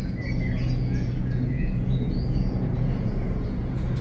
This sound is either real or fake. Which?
fake